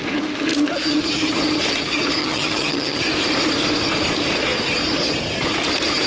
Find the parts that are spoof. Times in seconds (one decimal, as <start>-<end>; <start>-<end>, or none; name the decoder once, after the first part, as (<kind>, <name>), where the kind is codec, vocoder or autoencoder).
2.2-3.0 (vocoder, HiFi-GAN)